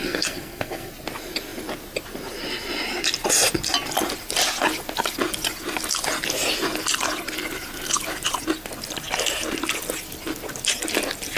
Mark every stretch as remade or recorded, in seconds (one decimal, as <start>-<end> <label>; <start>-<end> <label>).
0.0-0.9 remade; 0.9-11.4 recorded